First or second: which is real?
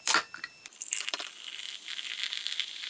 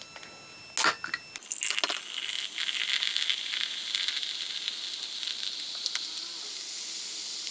second